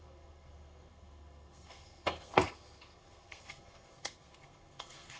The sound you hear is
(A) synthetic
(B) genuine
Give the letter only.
A